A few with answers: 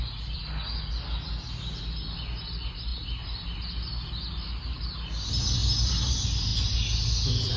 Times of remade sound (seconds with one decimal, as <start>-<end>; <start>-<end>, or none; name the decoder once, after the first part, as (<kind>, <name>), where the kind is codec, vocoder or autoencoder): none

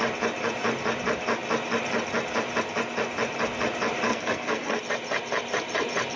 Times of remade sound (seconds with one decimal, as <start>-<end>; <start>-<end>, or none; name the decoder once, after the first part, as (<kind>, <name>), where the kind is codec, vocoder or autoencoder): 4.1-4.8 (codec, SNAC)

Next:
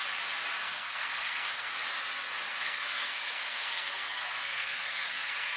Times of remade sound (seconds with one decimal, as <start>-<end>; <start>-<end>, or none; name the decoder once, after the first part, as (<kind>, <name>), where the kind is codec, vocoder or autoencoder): 0.6-1.7 (codec, SNAC); 2.5-5.6

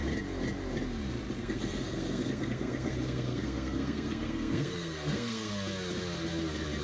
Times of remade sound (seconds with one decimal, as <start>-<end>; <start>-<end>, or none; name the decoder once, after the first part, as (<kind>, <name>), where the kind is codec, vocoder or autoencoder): 1.4-5.5 (codec, SNAC)

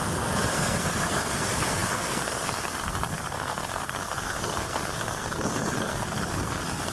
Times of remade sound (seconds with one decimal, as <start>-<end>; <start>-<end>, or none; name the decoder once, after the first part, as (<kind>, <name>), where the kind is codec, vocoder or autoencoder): 0.0-6.9 (codec, SNAC)

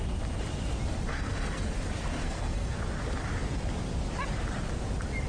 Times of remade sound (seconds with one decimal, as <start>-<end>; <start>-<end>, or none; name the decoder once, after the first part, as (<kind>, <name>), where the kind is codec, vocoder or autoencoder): 1.1-1.7 (codec, SNAC); 2.1-2.8

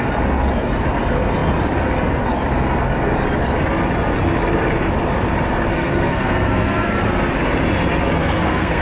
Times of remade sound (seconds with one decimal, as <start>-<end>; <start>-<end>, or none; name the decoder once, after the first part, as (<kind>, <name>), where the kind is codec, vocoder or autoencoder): 5.7-6.9 (codec, SNAC); 8.2-8.8